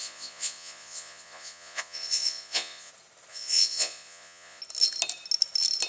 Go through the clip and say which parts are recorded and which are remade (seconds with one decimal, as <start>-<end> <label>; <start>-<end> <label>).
0.0-2.9 remade; 2.9-3.3 recorded; 3.3-4.6 remade; 4.6-5.9 recorded